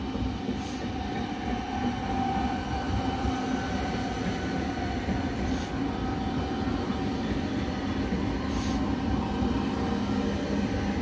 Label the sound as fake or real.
real